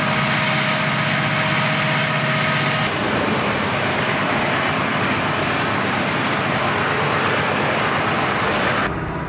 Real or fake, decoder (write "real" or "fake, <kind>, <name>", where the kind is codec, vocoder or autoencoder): real